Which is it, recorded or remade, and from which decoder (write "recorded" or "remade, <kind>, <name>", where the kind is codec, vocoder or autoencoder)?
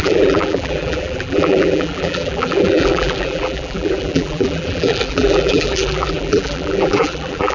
remade, vocoder, BigVGAN v2